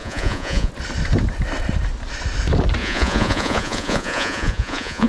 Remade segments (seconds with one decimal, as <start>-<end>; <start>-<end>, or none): 0.0-0.7; 2.8-5.1